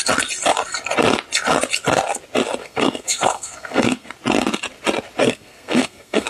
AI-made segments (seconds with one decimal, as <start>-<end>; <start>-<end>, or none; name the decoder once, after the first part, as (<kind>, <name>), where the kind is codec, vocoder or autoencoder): 2.6-4.1 (codec, SNAC); 5.2-6.3